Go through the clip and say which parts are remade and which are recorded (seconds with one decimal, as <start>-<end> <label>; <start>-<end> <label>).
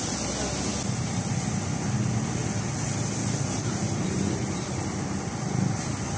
0.0-6.2 recorded